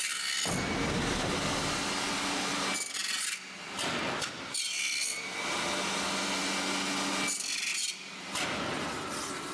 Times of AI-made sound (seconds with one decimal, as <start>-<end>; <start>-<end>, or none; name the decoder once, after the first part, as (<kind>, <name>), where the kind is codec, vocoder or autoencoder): none